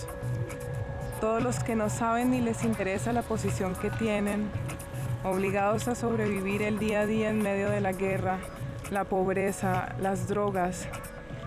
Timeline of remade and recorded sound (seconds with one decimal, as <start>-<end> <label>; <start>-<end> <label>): 0.0-1.6 remade; 1.6-2.8 recorded; 2.8-11.5 remade